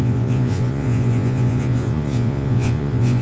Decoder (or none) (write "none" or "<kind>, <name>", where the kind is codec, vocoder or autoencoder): vocoder, Vocos